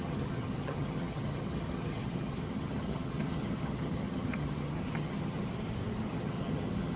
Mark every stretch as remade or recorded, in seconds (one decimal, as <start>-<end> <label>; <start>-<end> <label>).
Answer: 0.0-5.5 remade; 5.5-6.1 recorded; 6.1-7.0 remade